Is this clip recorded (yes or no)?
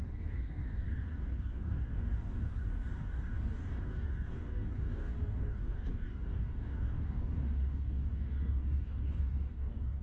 no